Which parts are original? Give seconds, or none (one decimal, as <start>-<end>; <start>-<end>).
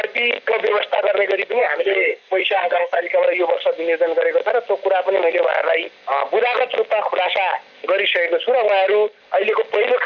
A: 0.0-1.6; 3.0-10.1